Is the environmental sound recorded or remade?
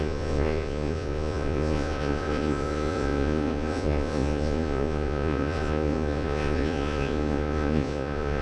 remade